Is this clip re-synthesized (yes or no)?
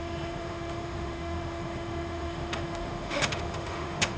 yes